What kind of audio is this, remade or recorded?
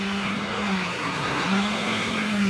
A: remade